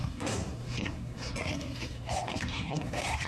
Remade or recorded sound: remade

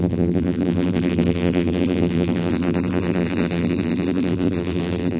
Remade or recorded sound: remade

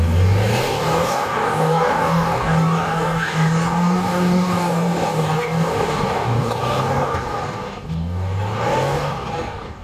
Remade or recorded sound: remade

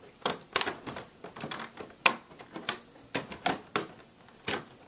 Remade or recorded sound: recorded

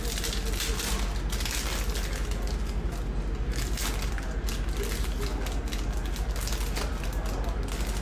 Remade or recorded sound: recorded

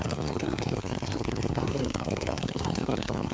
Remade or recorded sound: remade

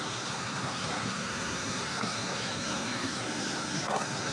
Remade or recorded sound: remade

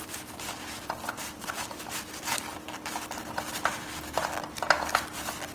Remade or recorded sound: recorded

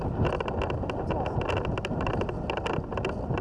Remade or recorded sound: recorded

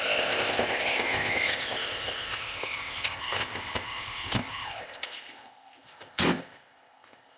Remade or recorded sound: remade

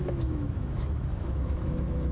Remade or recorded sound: remade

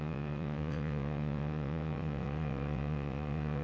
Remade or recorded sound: remade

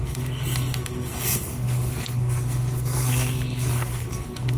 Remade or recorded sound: remade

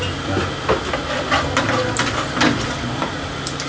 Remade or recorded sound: recorded